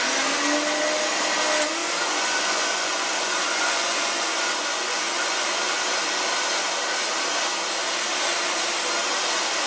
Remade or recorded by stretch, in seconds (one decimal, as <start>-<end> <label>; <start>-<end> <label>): 0.0-1.8 recorded; 1.8-5.5 remade; 5.5-9.7 recorded